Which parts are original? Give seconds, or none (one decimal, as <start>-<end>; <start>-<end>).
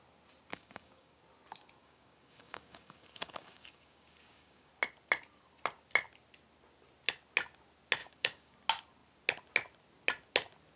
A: 0.0-0.5; 1.2-1.8; 4.7-8.0; 8.5-10.8